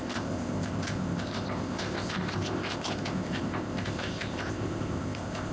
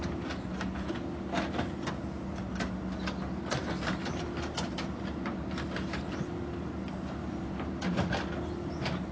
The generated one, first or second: first